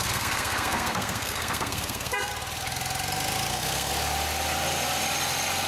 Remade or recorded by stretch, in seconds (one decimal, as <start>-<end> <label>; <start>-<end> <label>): 0.0-2.3 remade; 2.3-3.5 recorded; 3.5-3.9 remade; 3.9-5.7 recorded